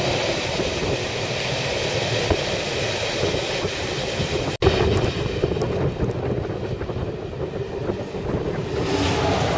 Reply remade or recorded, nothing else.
recorded